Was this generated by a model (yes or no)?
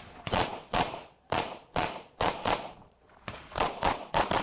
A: yes